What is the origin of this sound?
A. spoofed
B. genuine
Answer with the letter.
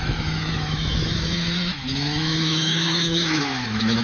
A